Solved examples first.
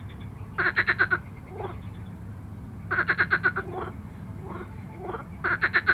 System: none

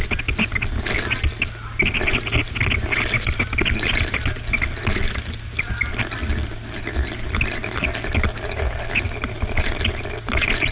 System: none